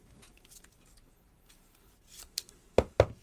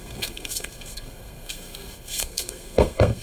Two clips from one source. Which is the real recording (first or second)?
first